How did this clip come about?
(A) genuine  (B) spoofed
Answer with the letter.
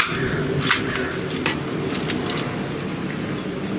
A